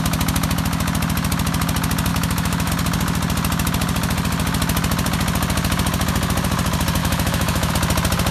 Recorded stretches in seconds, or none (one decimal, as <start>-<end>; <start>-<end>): 0.0-2.1; 2.7-7.0; 7.7-8.3